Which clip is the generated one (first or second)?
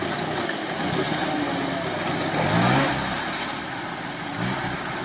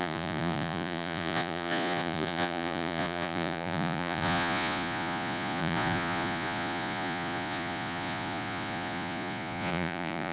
second